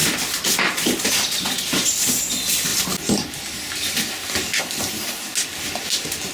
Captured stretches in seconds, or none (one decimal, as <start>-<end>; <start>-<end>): 0.0-6.3